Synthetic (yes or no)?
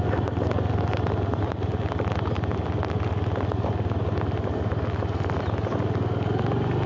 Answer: no